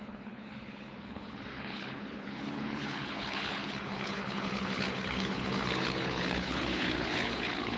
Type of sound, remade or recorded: remade